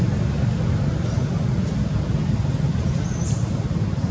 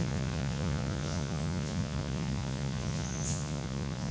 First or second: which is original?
first